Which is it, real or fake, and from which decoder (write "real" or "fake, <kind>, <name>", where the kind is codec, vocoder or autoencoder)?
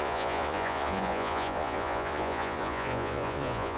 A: fake, vocoder, Vocos